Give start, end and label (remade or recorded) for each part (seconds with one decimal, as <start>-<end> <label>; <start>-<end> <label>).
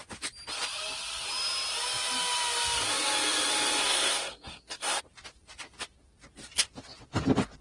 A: 0.0-3.8 recorded; 3.8-5.0 remade; 5.0-7.6 recorded